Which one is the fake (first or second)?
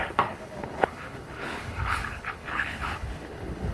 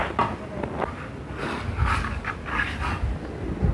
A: first